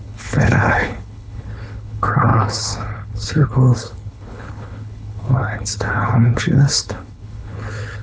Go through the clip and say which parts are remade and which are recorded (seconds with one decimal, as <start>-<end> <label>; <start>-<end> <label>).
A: 0.0-8.0 remade